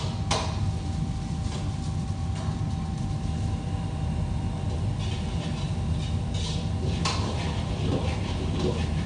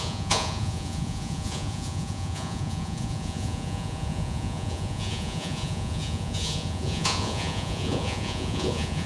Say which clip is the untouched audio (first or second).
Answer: first